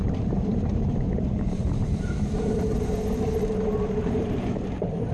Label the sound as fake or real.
fake